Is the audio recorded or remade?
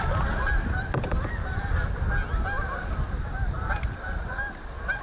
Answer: recorded